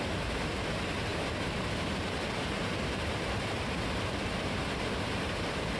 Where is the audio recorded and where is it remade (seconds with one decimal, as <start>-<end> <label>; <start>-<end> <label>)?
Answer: 0.0-1.1 recorded; 1.1-4.6 remade; 4.6-5.8 recorded